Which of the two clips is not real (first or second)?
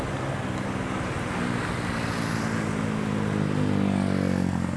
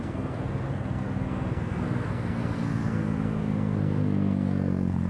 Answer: second